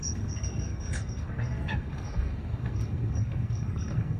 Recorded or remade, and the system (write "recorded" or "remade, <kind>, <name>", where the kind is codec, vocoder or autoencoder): remade, codec, SNAC